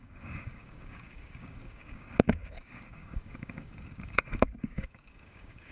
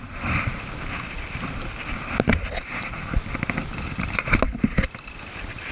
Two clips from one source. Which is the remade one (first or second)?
first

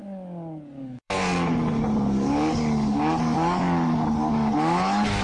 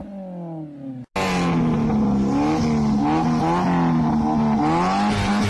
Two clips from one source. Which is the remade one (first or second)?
first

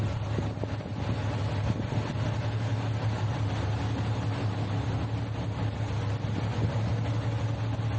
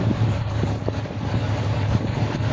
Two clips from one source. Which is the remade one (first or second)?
second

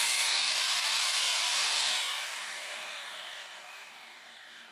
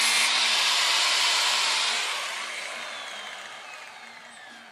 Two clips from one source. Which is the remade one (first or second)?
first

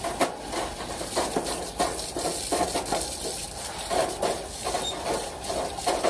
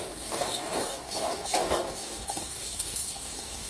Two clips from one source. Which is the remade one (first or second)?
second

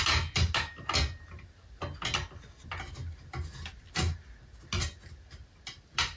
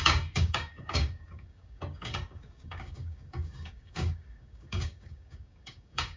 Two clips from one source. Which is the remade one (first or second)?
second